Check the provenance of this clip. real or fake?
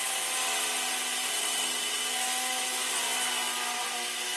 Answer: real